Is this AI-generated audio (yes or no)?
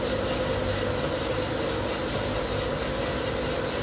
no